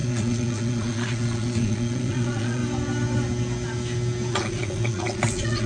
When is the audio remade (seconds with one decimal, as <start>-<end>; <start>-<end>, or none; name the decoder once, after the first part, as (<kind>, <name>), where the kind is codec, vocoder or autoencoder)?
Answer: 0.0-2.6 (vocoder, Vocos); 4.3-5.7